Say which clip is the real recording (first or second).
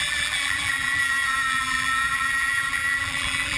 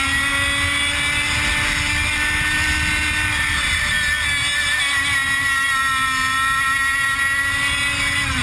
second